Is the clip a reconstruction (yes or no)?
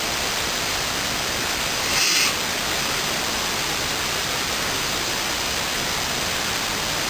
no